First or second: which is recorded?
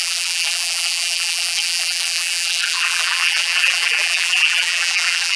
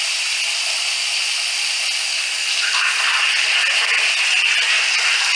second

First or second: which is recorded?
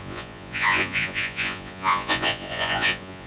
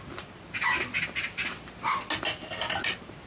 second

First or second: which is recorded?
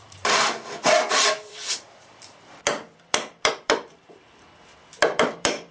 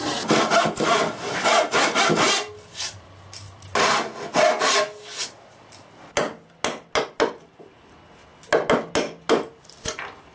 second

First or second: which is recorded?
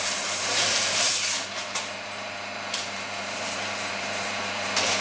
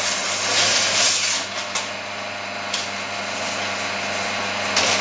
second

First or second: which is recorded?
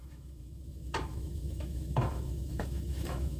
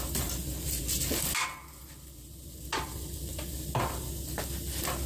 second